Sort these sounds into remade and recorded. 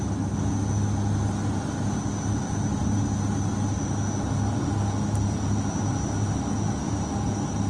recorded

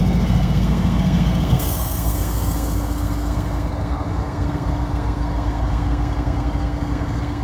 remade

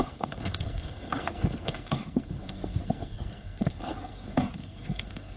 remade